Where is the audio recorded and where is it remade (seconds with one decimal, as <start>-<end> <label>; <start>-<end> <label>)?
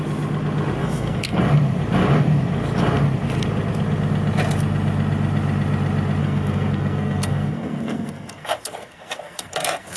0.0-0.8 recorded; 0.8-1.4 remade; 1.4-6.2 recorded; 6.2-10.0 remade